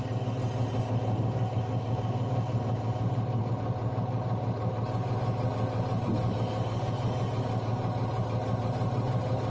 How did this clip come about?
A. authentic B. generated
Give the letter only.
A